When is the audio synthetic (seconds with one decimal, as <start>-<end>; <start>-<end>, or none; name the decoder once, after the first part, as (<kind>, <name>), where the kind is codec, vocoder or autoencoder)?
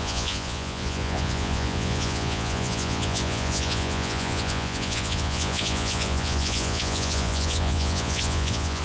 0.0-8.8 (vocoder, Vocos)